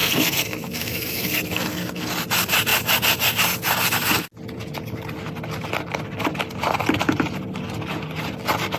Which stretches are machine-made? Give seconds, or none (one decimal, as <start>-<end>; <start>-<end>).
0.0-2.1